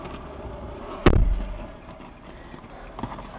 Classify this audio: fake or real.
real